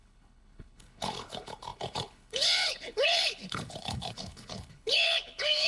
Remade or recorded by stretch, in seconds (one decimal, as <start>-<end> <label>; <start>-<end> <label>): 0.0-5.7 remade